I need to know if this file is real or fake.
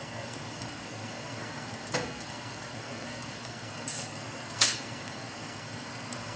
fake